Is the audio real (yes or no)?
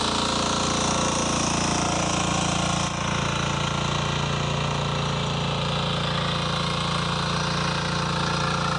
yes